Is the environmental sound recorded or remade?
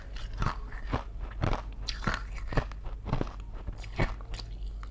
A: recorded